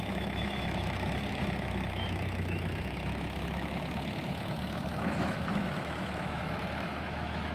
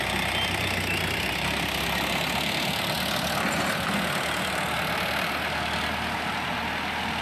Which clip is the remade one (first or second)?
first